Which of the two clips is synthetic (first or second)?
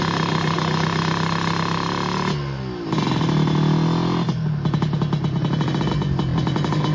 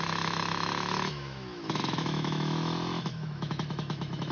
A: second